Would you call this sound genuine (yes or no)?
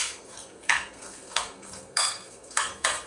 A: no